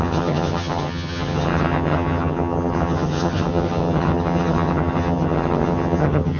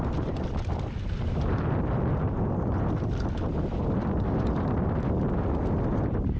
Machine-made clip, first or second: first